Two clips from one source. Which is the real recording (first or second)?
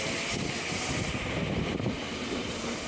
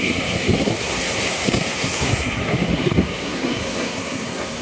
first